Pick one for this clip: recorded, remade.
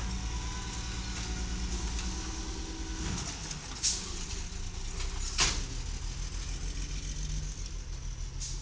recorded